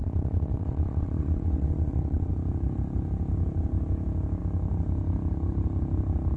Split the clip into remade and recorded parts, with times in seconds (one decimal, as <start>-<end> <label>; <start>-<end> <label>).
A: 0.0-2.3 remade; 2.3-6.4 recorded